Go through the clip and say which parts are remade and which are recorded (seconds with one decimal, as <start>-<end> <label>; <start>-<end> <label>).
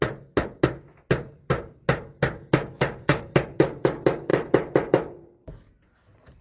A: 0.0-4.3 recorded; 4.3-5.5 remade; 5.5-6.4 recorded